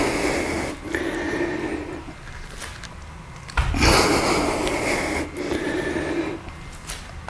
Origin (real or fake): real